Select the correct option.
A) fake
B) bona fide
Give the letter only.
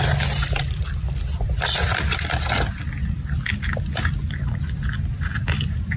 B